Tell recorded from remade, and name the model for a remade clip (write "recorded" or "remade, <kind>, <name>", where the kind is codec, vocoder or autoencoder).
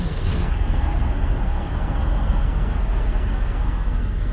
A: remade, codec, SNAC